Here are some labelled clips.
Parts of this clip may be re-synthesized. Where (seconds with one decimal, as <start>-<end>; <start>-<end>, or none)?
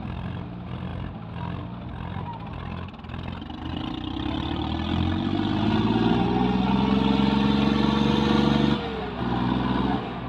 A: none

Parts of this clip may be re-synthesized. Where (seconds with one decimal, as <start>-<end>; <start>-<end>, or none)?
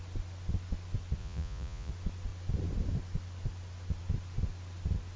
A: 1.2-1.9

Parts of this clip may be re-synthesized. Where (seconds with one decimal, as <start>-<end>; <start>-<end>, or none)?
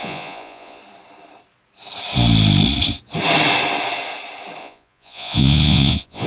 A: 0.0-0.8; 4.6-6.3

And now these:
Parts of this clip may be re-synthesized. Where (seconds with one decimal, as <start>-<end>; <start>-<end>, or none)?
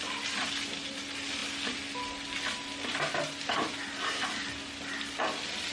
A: none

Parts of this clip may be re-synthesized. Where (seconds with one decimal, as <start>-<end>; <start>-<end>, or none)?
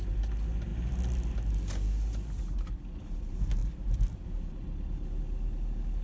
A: none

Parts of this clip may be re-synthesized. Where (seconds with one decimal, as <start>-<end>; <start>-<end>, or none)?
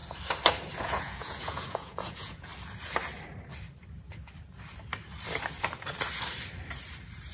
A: 0.8-2.5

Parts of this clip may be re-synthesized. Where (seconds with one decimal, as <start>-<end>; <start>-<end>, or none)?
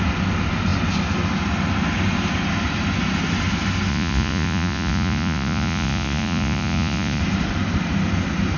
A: 3.9-7.2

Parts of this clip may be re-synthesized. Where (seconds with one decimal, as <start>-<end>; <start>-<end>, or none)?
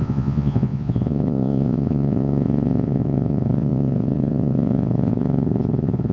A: 0.0-6.1